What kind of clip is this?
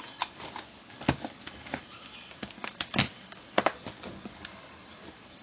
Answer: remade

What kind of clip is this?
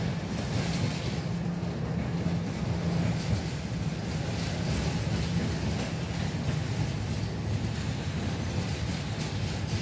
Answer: recorded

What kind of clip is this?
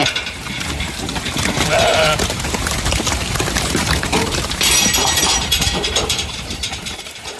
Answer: remade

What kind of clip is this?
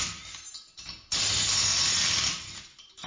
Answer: recorded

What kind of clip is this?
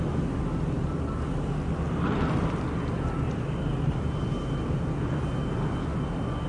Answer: recorded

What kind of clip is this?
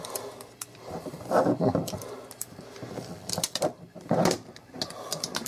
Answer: recorded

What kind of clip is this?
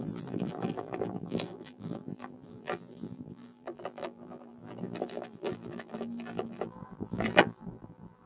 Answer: remade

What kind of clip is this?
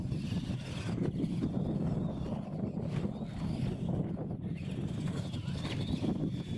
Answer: recorded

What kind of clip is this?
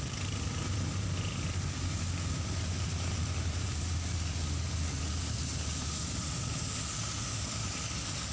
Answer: remade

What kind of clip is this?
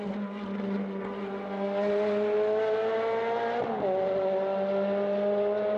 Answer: recorded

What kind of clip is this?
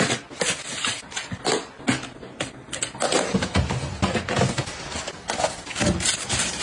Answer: recorded